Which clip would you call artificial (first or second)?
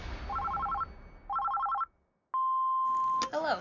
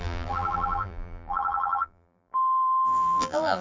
second